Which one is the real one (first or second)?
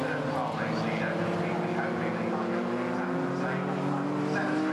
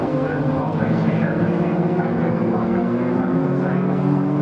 first